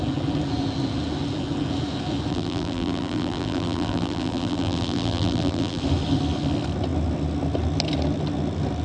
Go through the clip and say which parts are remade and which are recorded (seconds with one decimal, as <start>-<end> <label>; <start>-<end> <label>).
0.0-2.3 recorded; 2.3-5.8 remade; 5.8-8.8 recorded

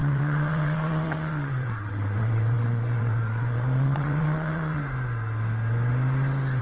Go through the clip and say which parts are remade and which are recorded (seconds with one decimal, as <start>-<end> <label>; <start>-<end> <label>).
0.0-4.8 remade; 4.8-6.6 recorded

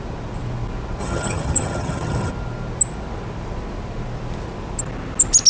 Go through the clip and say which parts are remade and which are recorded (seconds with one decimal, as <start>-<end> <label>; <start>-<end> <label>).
0.0-1.0 recorded; 1.0-2.3 remade; 2.3-5.5 recorded

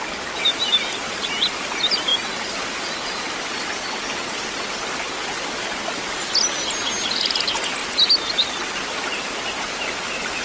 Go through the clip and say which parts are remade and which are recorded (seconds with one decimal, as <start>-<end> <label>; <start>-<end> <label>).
0.0-10.4 recorded